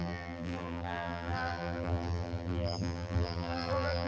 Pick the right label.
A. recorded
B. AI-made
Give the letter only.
B